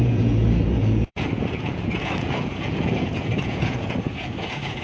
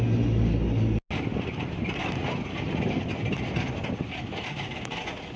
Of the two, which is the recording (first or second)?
second